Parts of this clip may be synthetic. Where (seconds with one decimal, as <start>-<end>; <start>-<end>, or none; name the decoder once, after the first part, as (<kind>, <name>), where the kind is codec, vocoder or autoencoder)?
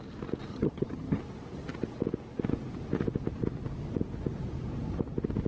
0.5-1.2 (vocoder, HiFi-GAN)